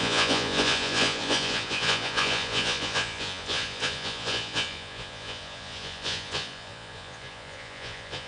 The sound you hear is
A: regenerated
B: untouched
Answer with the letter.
A